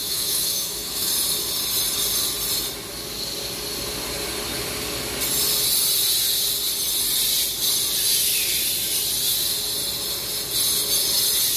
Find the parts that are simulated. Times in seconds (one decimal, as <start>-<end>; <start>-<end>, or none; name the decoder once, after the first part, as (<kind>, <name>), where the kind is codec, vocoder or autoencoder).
0.0-1.1 (autoencoder, DAC-VAE)